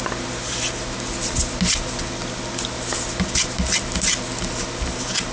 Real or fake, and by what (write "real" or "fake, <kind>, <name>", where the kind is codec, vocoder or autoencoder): real